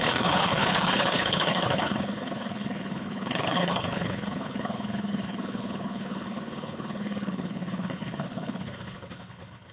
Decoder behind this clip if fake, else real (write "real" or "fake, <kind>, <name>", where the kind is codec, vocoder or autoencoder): fake, codec, HILCodec